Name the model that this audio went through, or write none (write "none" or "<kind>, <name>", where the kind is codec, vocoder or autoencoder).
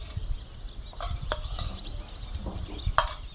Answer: none